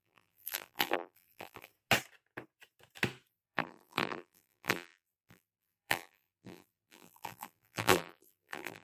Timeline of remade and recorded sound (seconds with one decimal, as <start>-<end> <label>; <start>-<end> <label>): 0.0-1.7 remade; 1.7-3.3 recorded; 3.3-8.8 remade